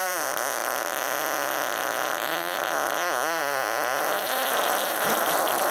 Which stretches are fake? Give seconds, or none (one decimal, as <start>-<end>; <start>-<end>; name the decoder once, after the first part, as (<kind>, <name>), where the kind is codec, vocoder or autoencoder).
0.0-5.7 (vocoder, BigVGAN v2)